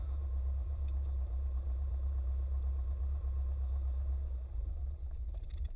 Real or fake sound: fake